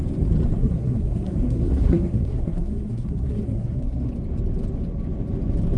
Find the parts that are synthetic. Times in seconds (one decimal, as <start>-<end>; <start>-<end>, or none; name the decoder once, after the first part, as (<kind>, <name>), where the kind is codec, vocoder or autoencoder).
0.6-4.1 (codec, SNAC)